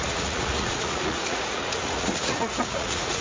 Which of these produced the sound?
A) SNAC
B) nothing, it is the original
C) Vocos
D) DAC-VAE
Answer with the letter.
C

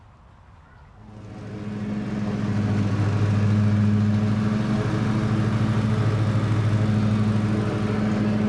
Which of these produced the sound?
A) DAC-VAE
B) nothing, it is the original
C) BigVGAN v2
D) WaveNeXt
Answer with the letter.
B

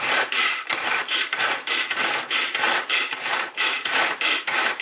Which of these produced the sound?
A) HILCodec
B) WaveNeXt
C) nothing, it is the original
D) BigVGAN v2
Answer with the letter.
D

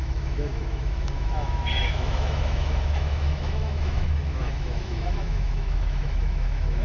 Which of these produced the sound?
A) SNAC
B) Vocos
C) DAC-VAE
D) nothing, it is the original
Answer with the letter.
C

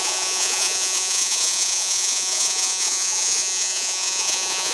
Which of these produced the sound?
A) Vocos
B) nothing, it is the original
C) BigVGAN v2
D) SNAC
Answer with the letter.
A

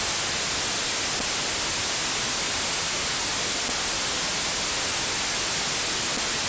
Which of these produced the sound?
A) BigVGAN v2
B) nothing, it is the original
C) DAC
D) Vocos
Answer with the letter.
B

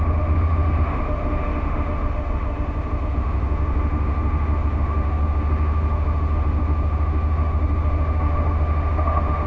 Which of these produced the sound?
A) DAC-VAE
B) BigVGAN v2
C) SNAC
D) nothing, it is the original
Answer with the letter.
A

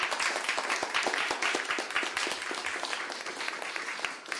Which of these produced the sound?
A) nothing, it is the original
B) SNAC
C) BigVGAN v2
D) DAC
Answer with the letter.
A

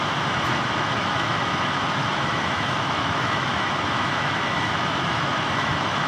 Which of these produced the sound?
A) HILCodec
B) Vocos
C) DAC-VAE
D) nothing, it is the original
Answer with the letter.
C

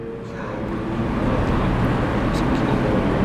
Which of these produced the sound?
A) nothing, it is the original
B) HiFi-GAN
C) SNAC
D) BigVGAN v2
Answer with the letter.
A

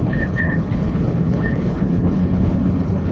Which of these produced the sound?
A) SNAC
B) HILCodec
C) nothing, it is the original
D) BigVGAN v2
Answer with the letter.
B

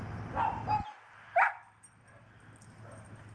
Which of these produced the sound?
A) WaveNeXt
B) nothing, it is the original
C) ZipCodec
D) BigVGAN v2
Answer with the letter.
B